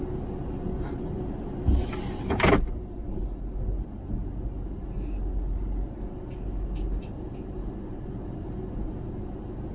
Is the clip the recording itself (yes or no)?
yes